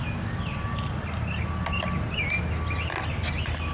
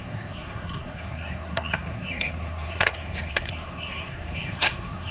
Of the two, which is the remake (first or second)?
second